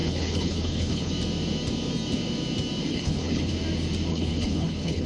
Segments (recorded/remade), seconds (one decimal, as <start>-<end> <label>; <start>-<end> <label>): 0.0-1.1 remade; 1.1-2.9 recorded; 2.9-3.5 remade; 3.5-4.1 recorded; 4.1-5.1 remade